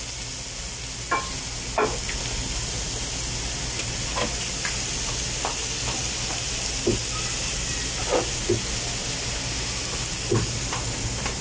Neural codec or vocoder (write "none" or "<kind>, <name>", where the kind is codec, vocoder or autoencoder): none